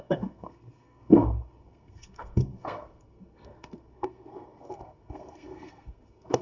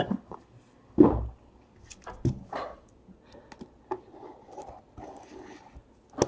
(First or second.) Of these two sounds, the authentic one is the second